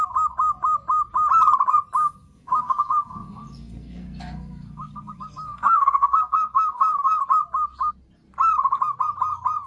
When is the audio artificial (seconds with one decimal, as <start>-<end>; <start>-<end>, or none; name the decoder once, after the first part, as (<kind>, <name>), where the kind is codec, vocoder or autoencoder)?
2.0-7.2 (codec, SNAC)